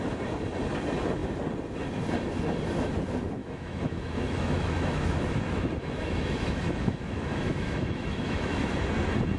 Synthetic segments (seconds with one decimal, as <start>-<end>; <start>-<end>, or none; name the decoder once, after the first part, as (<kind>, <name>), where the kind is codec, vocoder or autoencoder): 3.4-8.7 (autoencoder, DAC-VAE)